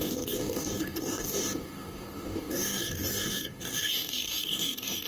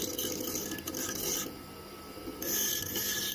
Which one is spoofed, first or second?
first